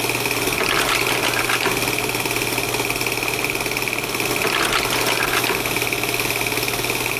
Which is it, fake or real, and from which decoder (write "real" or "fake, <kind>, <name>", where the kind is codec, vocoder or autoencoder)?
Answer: real